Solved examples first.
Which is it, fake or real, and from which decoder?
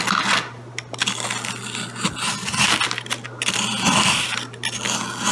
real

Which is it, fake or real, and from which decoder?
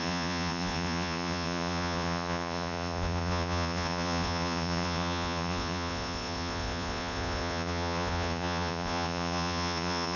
fake, vocoder, Vocos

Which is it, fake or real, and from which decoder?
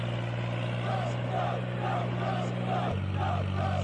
real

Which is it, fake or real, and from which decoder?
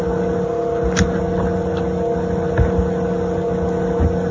real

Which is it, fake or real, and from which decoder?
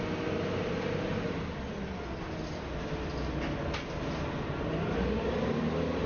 real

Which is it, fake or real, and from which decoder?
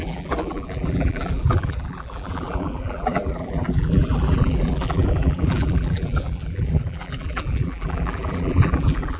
fake, vocoder, BigVGAN v2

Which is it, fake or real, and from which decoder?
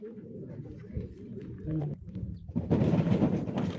fake, vocoder, BigVGAN v2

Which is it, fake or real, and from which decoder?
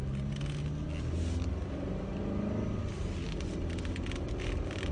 real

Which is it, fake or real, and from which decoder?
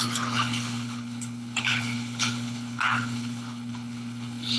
fake, codec, HILCodec